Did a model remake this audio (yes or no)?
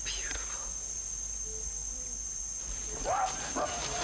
no